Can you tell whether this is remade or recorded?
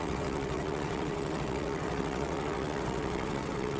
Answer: remade